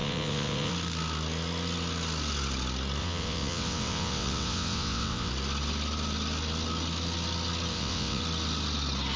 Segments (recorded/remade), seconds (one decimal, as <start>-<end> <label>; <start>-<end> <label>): 0.0-0.7 remade; 0.7-3.0 recorded; 3.0-5.3 remade; 5.3-7.7 recorded; 7.7-8.2 remade; 8.2-9.2 recorded